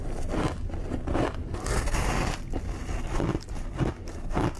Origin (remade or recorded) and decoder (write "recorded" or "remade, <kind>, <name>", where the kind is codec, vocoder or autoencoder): recorded